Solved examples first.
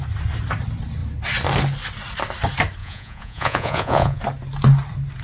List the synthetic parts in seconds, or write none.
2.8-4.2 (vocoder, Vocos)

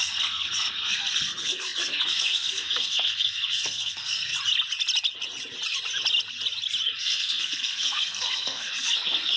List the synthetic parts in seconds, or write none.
0.0-4.3 (codec, SNAC); 7.0-9.4

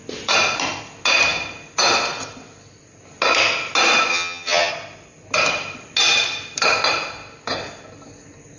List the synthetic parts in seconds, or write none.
4.1-4.7 (vocoder, HiFi-GAN)